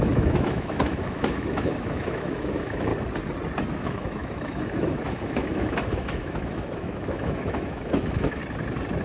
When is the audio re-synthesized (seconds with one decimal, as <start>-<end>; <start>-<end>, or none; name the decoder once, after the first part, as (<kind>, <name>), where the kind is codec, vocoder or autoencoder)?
0.0-2.9 (autoencoder, DAC-VAE); 3.7-8.4